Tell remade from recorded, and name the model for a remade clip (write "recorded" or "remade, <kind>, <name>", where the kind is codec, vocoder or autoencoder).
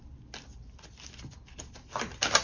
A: recorded